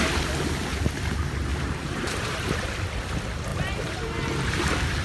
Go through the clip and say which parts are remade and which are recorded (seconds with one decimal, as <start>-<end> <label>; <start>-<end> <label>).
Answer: 0.0-1.5 recorded; 1.5-2.6 remade; 2.6-3.5 recorded; 3.5-4.6 remade; 4.6-5.0 recorded